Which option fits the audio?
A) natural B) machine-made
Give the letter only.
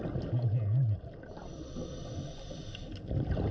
A